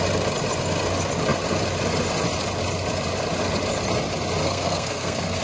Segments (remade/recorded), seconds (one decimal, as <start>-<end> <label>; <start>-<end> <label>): 0.0-4.4 recorded; 4.4-5.4 remade